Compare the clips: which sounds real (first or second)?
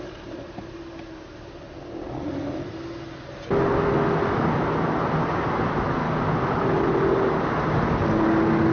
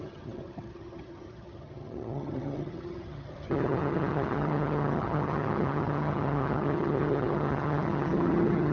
first